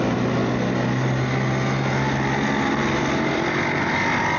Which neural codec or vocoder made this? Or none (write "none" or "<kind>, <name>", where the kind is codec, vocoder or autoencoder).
none